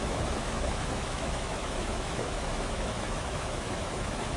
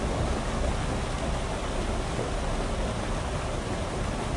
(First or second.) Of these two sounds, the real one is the second